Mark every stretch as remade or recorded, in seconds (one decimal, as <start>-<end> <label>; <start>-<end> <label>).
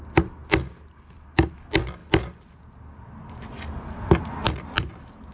0.0-5.3 recorded